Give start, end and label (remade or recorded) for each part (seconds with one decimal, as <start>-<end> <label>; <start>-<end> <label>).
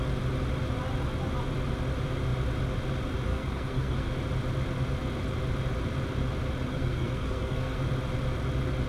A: 0.0-3.3 recorded; 3.3-4.1 remade; 4.1-6.7 recorded; 6.7-7.8 remade; 7.8-8.9 recorded